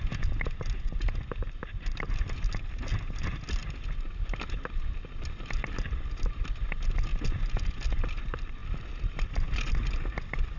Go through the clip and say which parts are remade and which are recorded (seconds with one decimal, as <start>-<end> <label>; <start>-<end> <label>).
0.0-10.6 recorded